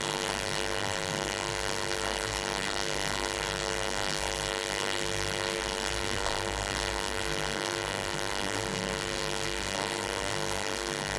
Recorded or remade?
remade